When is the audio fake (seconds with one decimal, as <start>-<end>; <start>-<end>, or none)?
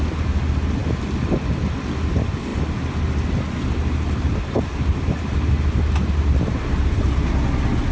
none